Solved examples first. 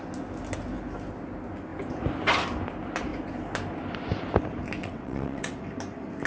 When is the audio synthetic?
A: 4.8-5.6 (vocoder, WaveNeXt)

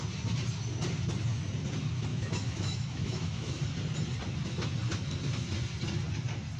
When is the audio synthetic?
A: 2.1-3.6 (autoencoder, DAC-VAE)

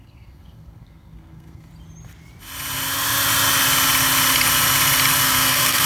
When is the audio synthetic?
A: 0.0-1.7 (codec, SNAC); 5.2-5.9

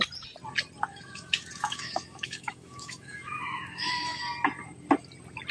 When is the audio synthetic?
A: 0.9-4.2 (autoencoder, DAC-VAE)

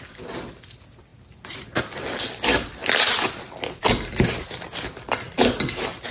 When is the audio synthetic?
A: none

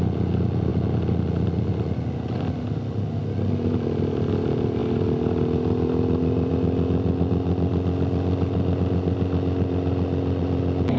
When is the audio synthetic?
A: none

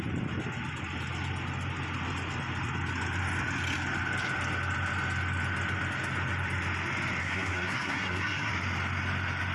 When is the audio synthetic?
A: 7.2-8.5 (codec, SNAC)